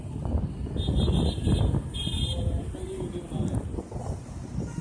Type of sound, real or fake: real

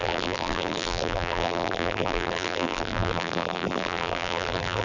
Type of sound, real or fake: fake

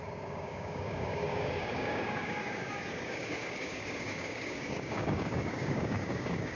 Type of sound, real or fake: fake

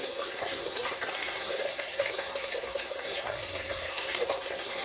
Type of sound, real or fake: fake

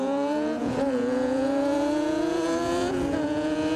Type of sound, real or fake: fake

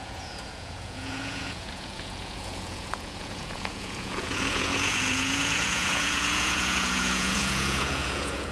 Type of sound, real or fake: fake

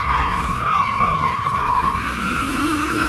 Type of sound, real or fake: fake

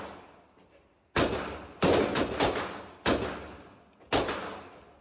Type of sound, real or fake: real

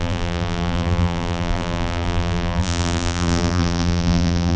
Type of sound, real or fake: fake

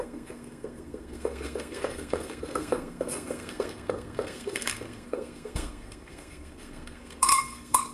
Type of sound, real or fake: fake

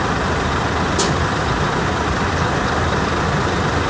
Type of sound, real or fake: real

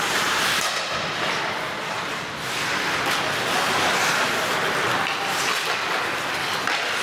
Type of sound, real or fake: real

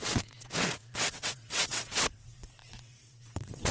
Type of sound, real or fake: fake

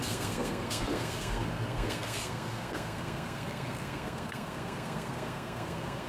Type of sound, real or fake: fake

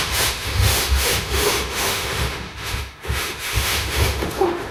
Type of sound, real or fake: fake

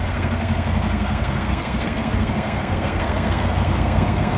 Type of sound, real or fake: fake